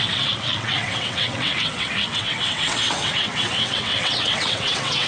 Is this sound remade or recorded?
remade